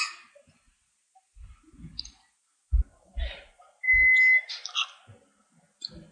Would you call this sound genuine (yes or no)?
yes